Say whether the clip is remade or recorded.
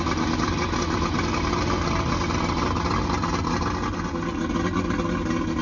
recorded